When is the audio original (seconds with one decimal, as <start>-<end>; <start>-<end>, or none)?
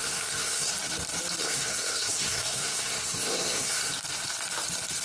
0.7-1.4; 3.9-5.0